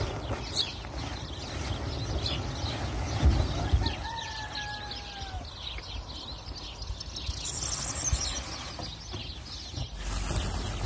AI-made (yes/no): no